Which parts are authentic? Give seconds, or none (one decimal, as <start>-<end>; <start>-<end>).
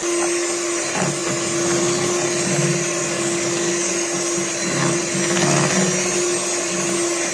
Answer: 0.0-3.0; 3.9-7.3